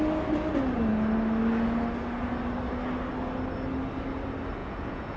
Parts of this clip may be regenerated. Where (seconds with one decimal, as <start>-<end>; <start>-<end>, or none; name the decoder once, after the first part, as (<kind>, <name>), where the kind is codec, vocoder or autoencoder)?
4.6-5.2 (vocoder, Vocos)